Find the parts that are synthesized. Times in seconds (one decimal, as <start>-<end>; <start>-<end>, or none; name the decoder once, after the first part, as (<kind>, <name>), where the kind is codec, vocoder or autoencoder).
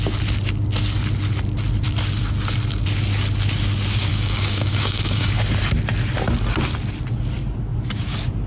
4.1-5.4 (codec, DAC)